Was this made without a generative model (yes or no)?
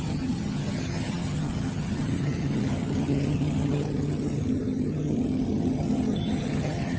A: no